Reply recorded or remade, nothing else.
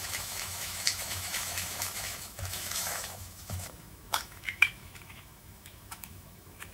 remade